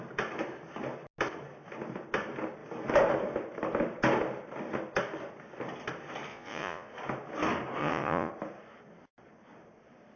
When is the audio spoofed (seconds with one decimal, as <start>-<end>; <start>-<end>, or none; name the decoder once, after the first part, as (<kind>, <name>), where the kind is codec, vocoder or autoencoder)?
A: 6.3-6.9 (vocoder, Vocos); 7.8-8.3